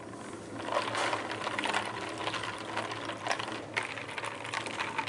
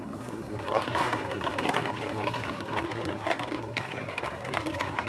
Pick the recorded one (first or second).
first